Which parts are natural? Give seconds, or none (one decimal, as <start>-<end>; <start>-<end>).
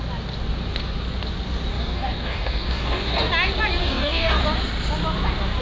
0.0-1.7; 3.3-3.8; 4.4-5.6